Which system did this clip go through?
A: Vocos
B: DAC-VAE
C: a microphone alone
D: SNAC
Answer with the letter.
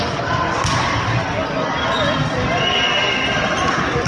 C